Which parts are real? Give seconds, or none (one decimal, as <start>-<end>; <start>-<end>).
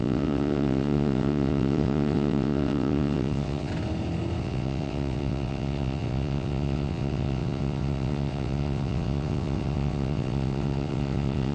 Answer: 3.7-4.4